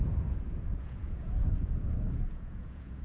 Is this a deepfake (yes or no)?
yes